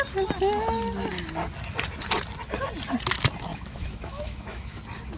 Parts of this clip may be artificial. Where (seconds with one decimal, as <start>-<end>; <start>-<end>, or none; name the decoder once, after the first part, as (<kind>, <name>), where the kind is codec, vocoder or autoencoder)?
3.5-4.8 (autoencoder, DAC-VAE)